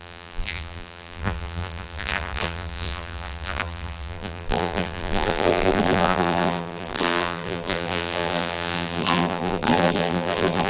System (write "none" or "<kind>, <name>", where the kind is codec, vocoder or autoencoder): vocoder, BigVGAN v2